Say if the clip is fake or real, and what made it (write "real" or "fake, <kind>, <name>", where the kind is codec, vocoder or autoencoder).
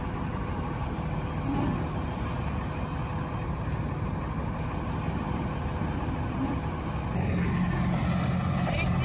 real